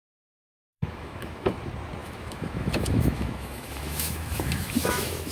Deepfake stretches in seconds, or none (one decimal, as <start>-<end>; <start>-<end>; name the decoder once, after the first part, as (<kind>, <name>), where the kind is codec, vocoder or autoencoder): 0.0-1.5 (autoencoder, DAC-VAE); 2.0-5.3